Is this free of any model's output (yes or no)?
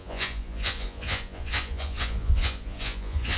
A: no